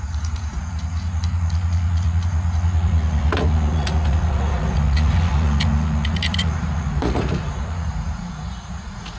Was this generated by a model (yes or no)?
yes